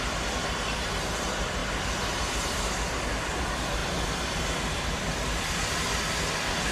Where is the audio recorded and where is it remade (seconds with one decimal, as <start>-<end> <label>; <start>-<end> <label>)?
0.0-6.7 remade